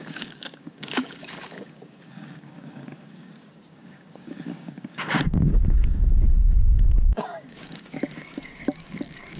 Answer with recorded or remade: remade